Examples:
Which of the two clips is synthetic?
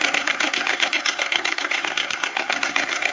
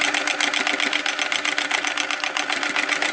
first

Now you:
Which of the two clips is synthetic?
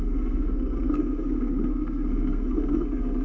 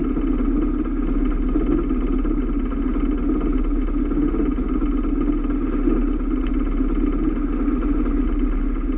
first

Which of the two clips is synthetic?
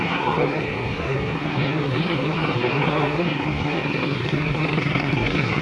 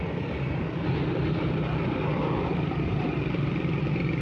first